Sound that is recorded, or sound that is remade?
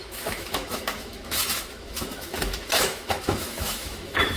remade